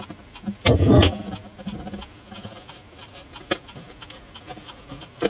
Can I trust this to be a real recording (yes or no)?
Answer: yes